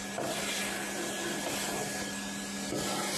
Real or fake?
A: real